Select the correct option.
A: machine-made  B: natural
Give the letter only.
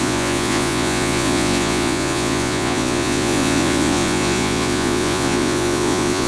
A